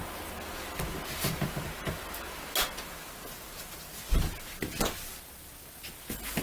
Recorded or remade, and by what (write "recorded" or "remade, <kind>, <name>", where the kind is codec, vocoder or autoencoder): recorded